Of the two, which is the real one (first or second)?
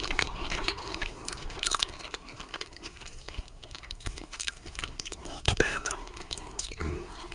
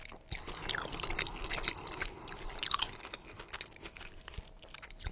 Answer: second